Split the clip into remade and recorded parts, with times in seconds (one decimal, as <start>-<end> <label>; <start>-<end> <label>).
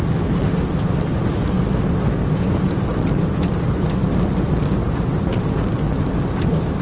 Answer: 0.0-6.8 recorded